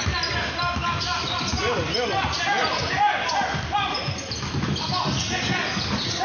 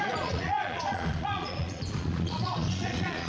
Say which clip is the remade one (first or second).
second